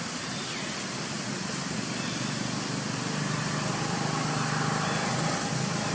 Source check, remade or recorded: recorded